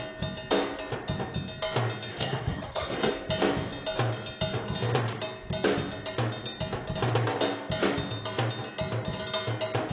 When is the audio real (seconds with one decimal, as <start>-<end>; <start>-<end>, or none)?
0.0-2.1; 3.1-9.9